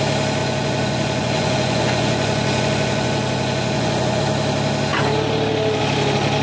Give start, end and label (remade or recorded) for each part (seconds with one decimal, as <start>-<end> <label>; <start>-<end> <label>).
0.0-0.4 recorded; 0.4-4.2 remade; 4.2-6.4 recorded